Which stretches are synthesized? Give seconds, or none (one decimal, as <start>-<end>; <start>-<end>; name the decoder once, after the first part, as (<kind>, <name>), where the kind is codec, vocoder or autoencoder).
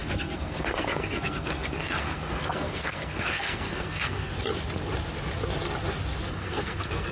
0.0-4.3 (codec, SNAC); 6.3-7.1